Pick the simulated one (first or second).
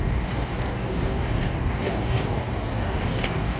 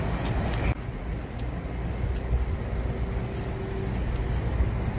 first